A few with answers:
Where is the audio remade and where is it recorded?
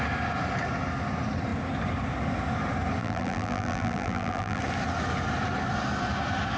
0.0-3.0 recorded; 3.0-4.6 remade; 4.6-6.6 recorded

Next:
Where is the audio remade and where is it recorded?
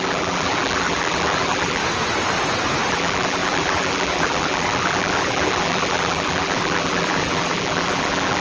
0.0-1.8 remade; 1.8-2.9 recorded; 2.9-8.4 remade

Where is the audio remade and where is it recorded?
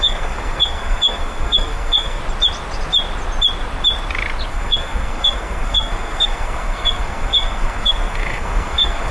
0.0-2.2 remade; 2.2-4.5 recorded; 4.5-9.1 remade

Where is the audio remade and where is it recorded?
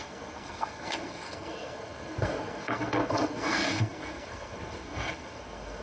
0.0-5.8 remade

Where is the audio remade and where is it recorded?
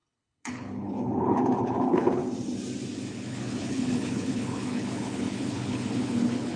0.0-2.2 remade; 2.2-3.1 recorded; 3.1-6.6 remade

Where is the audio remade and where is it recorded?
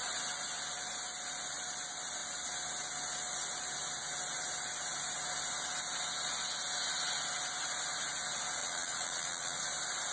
0.0-8.6 recorded; 8.6-9.6 remade; 9.6-10.1 recorded